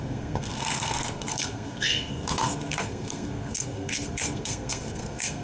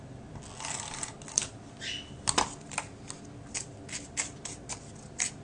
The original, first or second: second